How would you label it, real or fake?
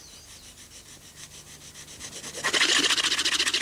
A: real